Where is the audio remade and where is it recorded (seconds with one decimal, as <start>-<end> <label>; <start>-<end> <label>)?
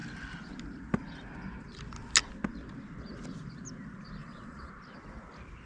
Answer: 0.0-4.2 recorded; 4.2-4.7 remade; 4.7-5.7 recorded